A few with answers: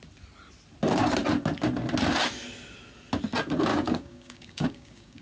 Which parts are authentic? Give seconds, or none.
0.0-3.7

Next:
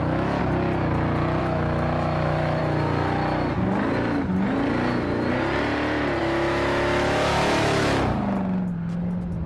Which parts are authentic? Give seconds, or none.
0.4-1.4; 2.6-6.2; 8.1-9.5

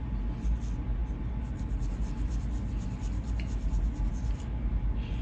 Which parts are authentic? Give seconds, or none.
0.0-5.2

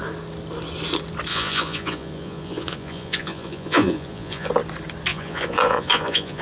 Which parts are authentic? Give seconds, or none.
0.0-1.3; 4.5-5.1